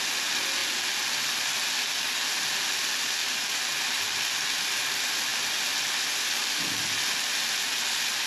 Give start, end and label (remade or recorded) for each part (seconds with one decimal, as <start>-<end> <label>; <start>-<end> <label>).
0.0-8.3 recorded